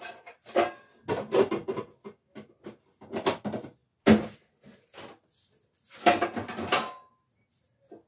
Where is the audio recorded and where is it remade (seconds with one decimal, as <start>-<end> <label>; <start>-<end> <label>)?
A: 0.0-8.1 recorded